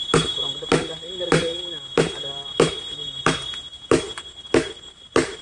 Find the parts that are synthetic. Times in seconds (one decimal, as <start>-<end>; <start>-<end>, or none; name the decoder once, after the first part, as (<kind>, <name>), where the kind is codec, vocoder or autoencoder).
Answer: none